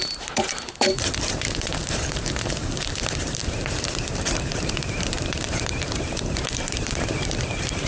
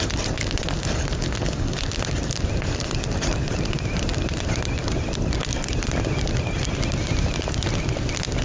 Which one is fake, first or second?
first